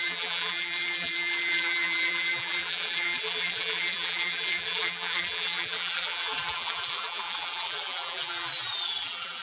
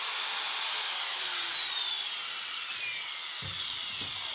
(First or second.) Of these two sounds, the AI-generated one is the first